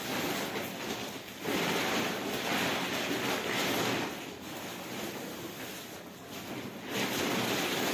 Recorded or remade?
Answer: recorded